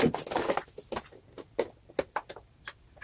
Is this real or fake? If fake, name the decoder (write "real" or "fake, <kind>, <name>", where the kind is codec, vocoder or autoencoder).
real